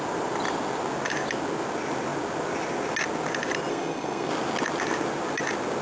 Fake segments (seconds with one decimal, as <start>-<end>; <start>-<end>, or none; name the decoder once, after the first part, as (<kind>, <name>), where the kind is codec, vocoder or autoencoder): 3.7-4.3 (codec, SNAC)